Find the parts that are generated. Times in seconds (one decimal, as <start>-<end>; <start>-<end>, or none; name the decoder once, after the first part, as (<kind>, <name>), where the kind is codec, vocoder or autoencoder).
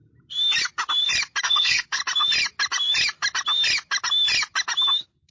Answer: 1.4-2.0 (codec, SNAC)